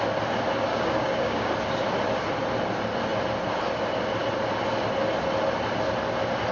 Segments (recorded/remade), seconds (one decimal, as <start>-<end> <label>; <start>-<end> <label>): 0.0-0.7 recorded; 0.7-1.5 remade; 1.5-6.5 recorded